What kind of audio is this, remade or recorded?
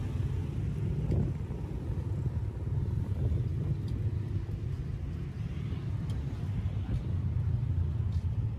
recorded